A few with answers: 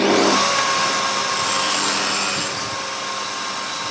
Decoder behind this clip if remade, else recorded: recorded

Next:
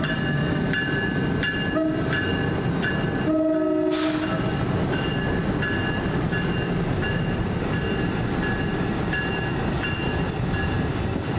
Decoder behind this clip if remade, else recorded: recorded